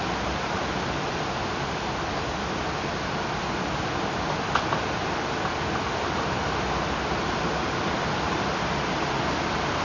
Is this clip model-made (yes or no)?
no